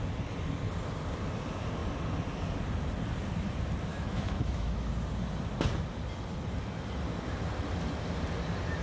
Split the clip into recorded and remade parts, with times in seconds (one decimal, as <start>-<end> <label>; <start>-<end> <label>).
0.0-3.9 recorded; 3.9-4.9 remade; 4.9-8.8 recorded